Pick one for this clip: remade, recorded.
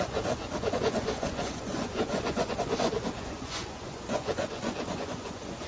remade